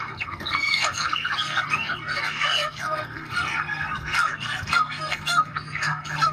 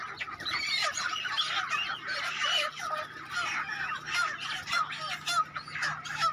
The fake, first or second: first